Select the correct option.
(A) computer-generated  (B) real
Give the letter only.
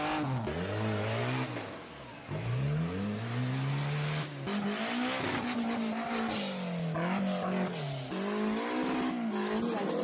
B